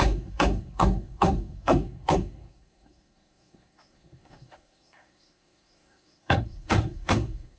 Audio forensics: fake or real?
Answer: fake